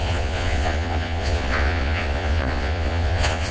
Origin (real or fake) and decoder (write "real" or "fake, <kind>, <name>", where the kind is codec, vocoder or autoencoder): fake, vocoder, Vocos